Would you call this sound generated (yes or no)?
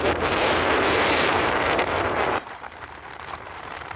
yes